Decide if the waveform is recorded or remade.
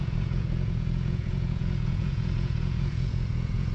remade